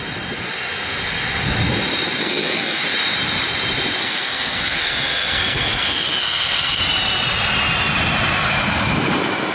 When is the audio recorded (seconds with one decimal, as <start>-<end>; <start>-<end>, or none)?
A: 0.0-2.2; 2.8-4.0; 6.8-9.5